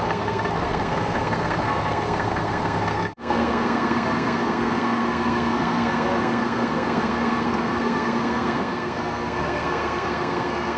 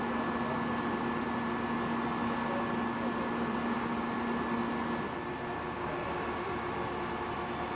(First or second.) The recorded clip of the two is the second